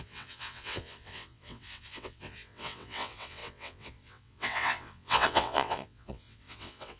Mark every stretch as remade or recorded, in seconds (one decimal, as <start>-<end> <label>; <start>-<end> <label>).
0.0-7.0 remade